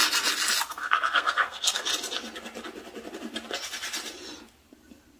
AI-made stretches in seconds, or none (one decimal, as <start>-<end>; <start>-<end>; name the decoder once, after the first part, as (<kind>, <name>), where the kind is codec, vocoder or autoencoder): 0.7-1.9 (codec, SNAC)